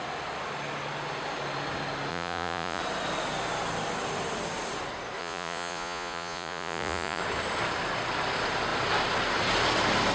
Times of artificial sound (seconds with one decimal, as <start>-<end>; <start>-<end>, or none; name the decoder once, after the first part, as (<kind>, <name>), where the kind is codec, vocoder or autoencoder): 2.1-2.8 (vocoder, Vocos); 5.2-7.2